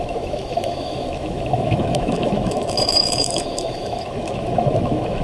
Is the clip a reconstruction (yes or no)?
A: yes